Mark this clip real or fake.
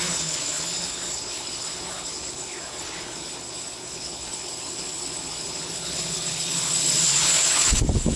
fake